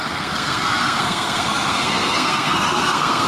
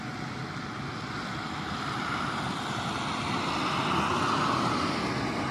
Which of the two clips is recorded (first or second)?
second